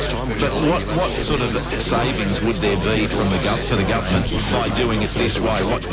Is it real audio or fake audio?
real